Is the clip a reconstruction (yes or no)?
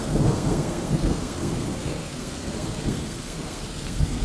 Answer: yes